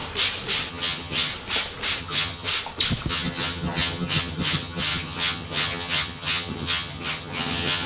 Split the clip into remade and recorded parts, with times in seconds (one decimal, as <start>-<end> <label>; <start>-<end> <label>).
0.0-0.7 recorded; 0.7-1.3 remade; 1.3-2.0 recorded; 2.0-2.5 remade; 2.5-3.1 recorded; 3.1-7.9 remade

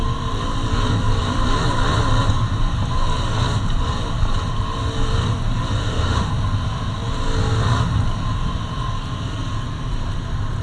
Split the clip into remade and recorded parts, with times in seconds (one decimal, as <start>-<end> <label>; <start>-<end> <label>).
0.0-5.8 recorded; 5.8-6.3 remade; 6.3-10.6 recorded

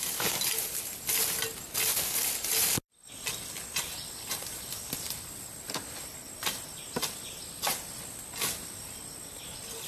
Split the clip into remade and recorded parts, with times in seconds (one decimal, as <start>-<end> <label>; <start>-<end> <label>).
0.0-9.9 recorded

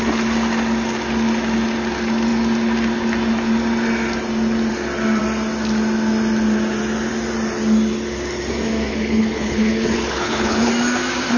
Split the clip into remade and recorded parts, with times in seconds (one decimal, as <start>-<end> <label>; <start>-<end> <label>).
0.0-8.9 recorded; 8.9-10.7 remade; 10.7-11.4 recorded

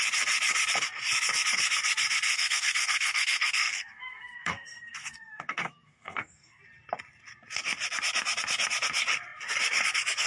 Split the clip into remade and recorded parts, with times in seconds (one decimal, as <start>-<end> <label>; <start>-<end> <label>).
0.0-2.3 recorded; 2.3-6.6 remade; 6.6-10.3 recorded

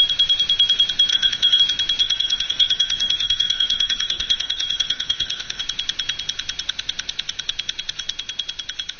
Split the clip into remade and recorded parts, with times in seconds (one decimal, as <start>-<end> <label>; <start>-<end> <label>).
0.0-1.1 recorded; 1.1-1.6 remade; 1.6-2.0 recorded; 2.0-5.6 remade; 5.6-9.0 recorded